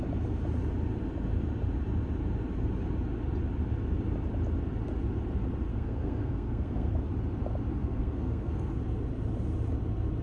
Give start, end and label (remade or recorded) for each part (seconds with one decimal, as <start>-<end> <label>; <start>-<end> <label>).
0.0-5.7 recorded; 5.7-7.1 remade; 7.1-7.8 recorded; 7.8-8.7 remade; 8.7-10.2 recorded